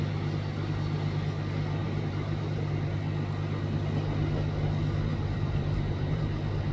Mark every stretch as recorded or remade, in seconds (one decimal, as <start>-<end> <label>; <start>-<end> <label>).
0.0-1.8 recorded; 1.8-2.7 remade; 2.7-5.1 recorded; 5.1-6.2 remade; 6.2-6.7 recorded